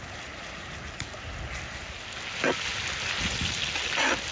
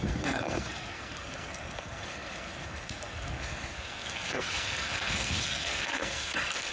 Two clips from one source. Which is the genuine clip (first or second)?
first